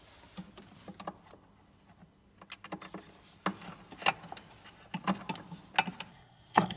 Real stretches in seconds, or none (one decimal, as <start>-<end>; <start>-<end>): 0.0-6.1